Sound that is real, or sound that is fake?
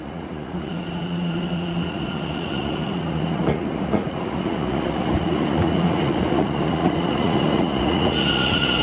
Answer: fake